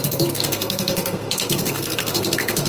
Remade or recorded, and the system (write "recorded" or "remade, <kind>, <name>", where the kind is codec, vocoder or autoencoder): remade, codec, SNAC